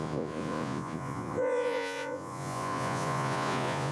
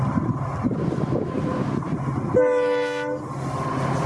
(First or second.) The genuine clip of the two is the second